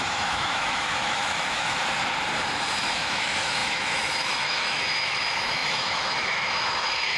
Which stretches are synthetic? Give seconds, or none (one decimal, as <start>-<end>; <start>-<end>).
0.0-1.8; 2.8-7.2